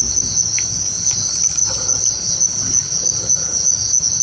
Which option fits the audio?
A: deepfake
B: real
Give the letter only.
B